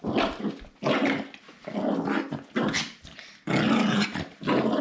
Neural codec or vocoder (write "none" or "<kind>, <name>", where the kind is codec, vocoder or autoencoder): none